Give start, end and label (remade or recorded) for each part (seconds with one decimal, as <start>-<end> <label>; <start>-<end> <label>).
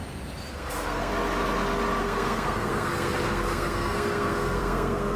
0.0-0.5 recorded; 0.5-1.1 remade; 1.1-2.0 recorded; 2.0-5.2 remade